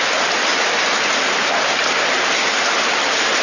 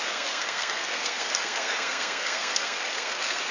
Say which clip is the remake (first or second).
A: second